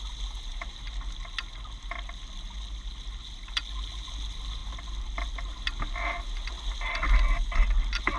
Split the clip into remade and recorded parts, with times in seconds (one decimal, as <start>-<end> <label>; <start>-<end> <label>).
0.0-8.2 recorded